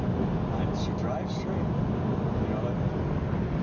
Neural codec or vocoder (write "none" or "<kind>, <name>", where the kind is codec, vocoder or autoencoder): none